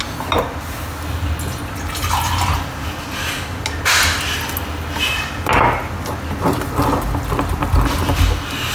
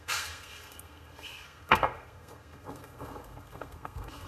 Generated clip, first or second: second